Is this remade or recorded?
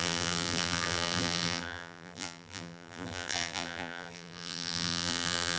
remade